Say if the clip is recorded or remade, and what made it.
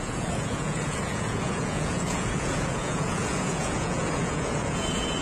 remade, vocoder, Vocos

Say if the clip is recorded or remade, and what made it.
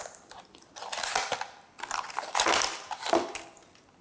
recorded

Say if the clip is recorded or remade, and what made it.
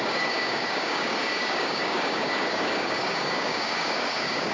remade, codec, DAC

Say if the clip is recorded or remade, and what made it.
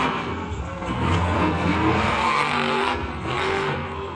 remade, codec, SNAC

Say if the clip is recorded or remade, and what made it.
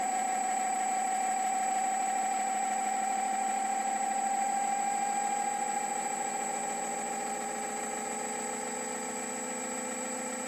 recorded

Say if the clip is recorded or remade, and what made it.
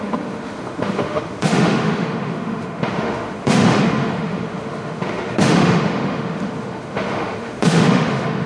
remade, autoencoder, DAC-VAE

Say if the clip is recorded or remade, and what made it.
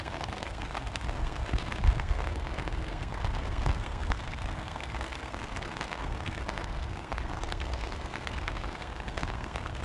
remade, codec, SNAC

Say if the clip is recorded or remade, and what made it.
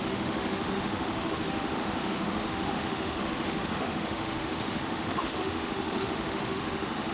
remade, autoencoder, DAC-VAE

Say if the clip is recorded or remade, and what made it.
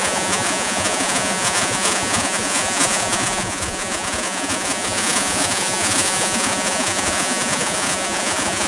remade, vocoder, Vocos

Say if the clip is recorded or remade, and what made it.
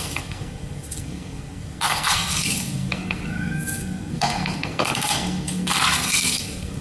remade, codec, SNAC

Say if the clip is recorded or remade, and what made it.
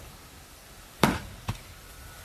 remade, vocoder, BigVGAN v2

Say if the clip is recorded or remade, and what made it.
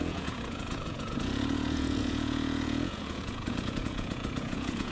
remade, vocoder, Vocos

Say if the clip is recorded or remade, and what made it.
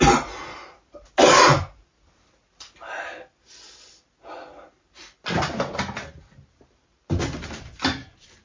recorded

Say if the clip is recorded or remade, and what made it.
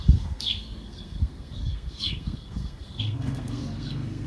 remade, codec, SNAC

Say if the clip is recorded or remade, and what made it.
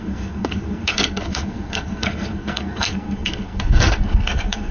remade, codec, SNAC